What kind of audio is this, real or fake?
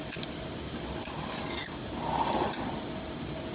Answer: real